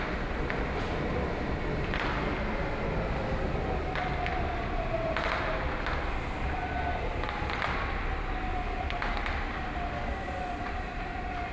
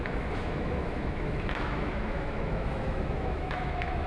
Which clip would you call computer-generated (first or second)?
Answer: second